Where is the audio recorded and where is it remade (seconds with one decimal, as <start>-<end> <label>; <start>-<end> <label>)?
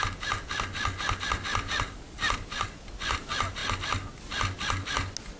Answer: 0.0-5.4 recorded